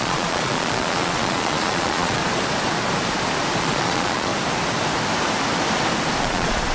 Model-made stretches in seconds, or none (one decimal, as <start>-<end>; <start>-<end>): 0.0-2.2; 3.6-4.3; 6.2-6.7